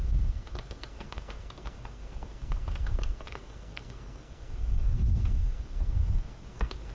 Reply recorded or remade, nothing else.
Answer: remade